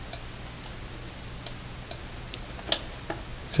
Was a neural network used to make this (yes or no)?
no